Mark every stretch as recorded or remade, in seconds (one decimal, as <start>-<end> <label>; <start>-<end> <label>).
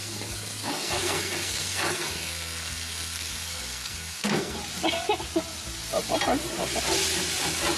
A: 0.0-4.6 remade; 4.6-7.8 recorded